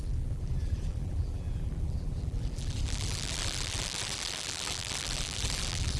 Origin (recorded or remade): remade